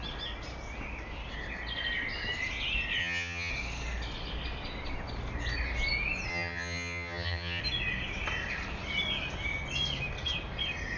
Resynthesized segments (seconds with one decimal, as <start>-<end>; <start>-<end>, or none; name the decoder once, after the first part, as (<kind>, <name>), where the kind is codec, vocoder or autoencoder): 3.0-3.5 (vocoder, HiFi-GAN); 6.3-7.6